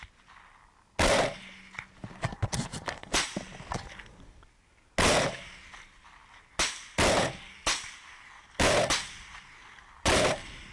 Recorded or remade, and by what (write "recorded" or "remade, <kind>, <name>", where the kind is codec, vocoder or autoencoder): recorded